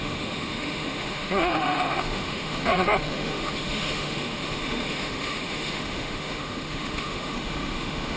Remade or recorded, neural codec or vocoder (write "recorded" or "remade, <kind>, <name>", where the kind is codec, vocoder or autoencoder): remade, autoencoder, DAC-VAE